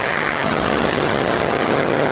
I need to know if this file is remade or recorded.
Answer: remade